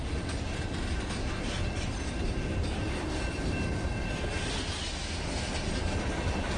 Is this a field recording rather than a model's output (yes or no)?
yes